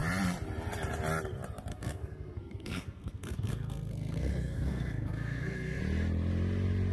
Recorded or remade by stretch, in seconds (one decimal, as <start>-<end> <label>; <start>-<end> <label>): 0.0-1.7 recorded; 1.7-5.8 remade; 5.8-6.9 recorded